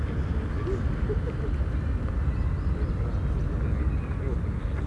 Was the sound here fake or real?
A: real